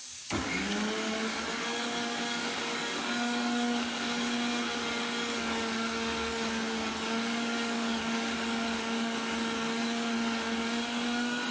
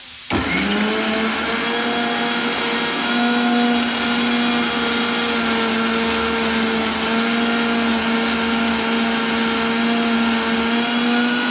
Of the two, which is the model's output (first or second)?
first